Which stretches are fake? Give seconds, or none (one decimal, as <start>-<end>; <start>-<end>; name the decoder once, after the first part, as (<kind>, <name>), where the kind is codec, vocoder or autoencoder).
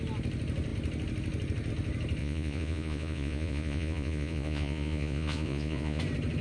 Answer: 2.2-6.0 (vocoder, Vocos)